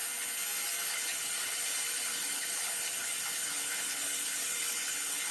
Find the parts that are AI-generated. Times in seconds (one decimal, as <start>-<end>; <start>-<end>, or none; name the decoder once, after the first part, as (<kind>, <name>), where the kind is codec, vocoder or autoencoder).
0.9-5.3 (codec, HILCodec)